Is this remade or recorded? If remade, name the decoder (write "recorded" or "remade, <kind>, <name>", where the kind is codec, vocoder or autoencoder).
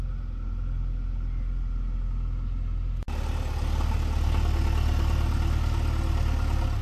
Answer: recorded